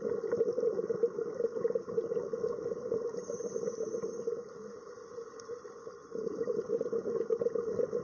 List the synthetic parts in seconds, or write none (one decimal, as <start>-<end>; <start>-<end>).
6.0-7.0